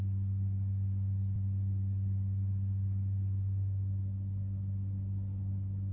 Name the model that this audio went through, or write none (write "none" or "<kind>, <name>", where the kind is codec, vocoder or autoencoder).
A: none